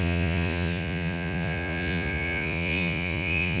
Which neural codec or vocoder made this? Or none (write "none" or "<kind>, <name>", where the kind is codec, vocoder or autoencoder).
vocoder, Vocos